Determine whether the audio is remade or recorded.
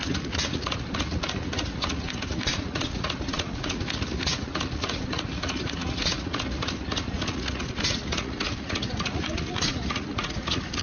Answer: remade